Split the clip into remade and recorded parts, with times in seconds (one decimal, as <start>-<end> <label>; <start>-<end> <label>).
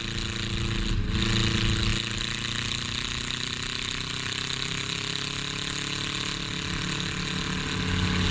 0.0-8.3 recorded